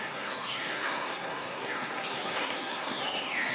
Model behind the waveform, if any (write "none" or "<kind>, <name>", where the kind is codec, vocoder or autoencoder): codec, SNAC